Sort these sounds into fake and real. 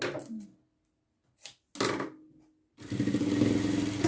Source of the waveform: real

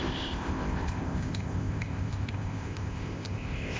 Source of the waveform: fake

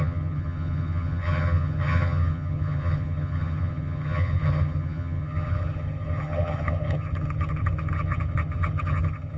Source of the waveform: fake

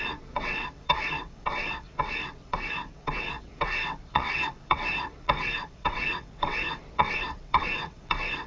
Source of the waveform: fake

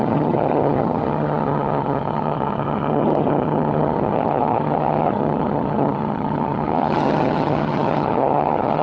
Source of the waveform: fake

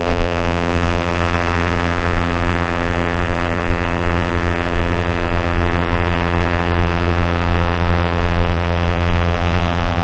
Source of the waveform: fake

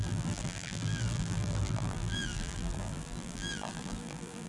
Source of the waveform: fake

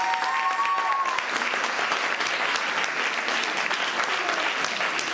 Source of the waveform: real